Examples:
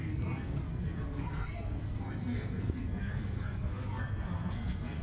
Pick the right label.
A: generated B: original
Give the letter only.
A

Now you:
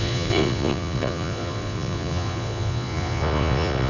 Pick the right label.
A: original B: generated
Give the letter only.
B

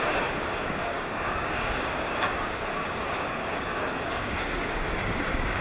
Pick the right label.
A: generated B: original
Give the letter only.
A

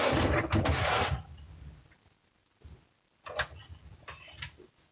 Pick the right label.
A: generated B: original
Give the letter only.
B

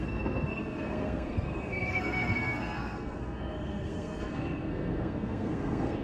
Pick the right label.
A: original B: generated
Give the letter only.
B